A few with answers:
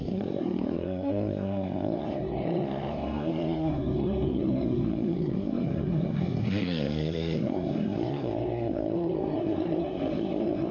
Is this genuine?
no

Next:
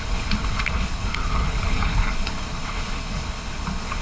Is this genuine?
no